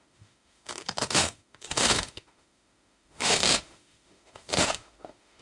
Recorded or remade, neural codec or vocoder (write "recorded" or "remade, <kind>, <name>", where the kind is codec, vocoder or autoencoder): remade, autoencoder, DAC-VAE